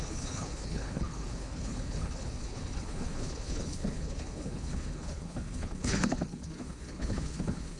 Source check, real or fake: fake